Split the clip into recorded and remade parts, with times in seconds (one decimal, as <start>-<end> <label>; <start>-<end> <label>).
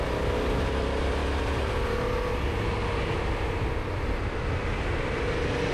0.0-5.7 recorded